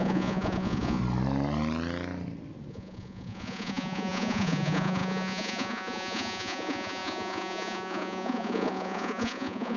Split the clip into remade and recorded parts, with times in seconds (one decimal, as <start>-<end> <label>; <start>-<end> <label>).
0.0-1.0 remade; 1.0-2.7 recorded; 2.7-9.8 remade